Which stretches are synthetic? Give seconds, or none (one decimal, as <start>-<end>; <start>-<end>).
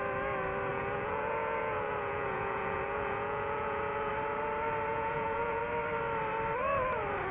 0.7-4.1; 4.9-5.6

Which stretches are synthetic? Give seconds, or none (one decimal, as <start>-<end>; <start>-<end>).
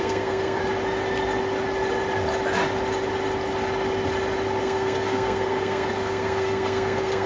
0.0-0.6; 4.6-7.3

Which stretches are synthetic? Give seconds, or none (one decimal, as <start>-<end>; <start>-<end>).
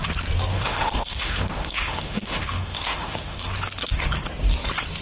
0.5-3.5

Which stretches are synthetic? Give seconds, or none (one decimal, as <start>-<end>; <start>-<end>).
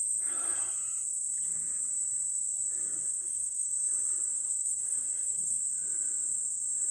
3.1-3.7; 4.3-5.6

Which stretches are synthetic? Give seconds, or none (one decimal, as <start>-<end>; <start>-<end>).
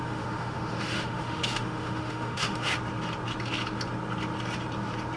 0.0-2.7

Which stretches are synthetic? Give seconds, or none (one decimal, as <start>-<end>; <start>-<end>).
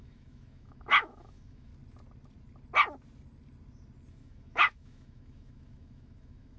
0.0-1.7; 4.1-6.6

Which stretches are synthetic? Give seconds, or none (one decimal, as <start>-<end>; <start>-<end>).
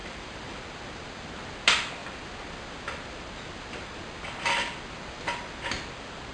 0.0-0.6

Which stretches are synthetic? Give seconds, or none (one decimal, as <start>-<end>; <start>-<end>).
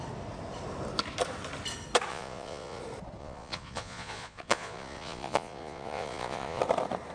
2.1-2.8; 3.2-6.6